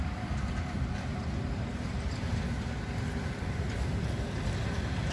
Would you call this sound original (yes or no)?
yes